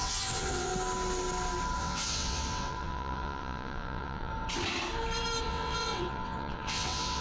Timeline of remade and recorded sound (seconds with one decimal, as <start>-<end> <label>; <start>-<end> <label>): 0.0-0.7 remade; 0.7-1.8 recorded; 1.8-4.3 remade; 4.3-5.4 recorded; 5.4-7.2 remade